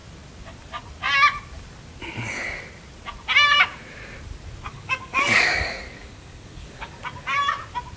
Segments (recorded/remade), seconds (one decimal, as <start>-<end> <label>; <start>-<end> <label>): 0.0-4.7 recorded; 4.7-7.0 remade; 7.0-8.0 recorded